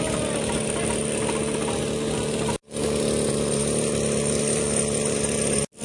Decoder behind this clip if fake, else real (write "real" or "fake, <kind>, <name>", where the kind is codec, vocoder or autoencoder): real